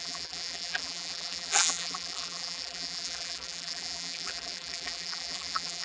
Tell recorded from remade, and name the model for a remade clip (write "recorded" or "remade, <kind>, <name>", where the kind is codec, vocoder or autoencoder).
remade, vocoder, BigVGAN v2